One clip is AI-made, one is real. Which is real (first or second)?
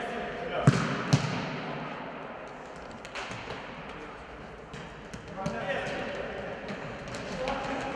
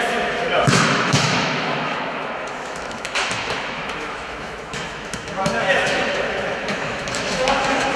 first